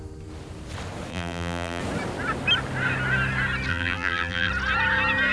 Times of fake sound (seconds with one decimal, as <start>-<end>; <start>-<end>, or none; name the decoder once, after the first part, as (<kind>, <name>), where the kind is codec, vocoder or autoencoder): 1.1-1.8 (vocoder, BigVGAN v2); 3.7-4.5